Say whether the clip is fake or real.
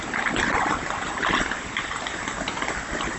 real